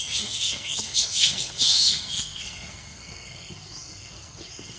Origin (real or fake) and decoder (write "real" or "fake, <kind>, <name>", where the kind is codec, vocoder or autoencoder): fake, codec, SNAC